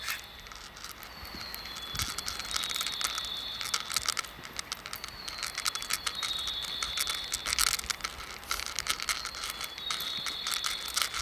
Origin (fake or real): real